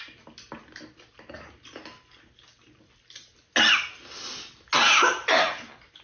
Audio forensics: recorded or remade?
recorded